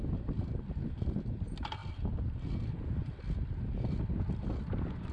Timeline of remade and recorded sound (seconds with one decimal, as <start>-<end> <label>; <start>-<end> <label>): 0.0-5.1 recorded

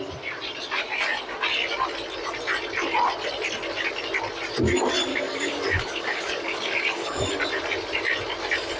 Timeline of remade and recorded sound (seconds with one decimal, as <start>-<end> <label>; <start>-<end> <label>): 0.0-5.1 recorded; 5.1-7.3 remade; 7.3-8.8 recorded

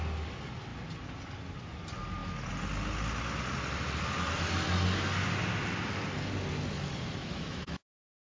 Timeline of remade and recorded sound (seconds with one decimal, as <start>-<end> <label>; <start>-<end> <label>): 0.0-7.2 recorded; 7.2-8.2 remade

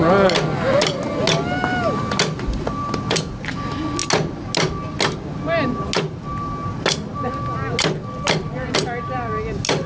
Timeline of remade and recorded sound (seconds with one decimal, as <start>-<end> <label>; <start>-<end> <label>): 0.0-9.9 recorded

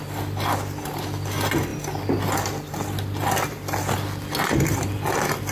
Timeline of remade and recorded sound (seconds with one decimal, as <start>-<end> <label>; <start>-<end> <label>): 0.0-1.7 recorded; 1.7-2.3 remade; 2.3-5.5 recorded